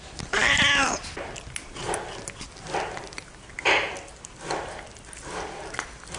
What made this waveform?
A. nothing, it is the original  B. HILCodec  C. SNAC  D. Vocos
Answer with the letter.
A